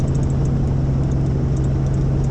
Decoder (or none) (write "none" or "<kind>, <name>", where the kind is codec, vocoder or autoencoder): none